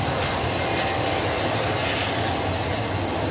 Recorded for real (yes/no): yes